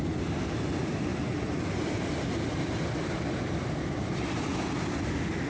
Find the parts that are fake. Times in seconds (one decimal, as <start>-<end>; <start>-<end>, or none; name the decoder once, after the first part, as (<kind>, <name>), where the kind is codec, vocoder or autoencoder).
1.1-4.4 (vocoder, BigVGAN v2)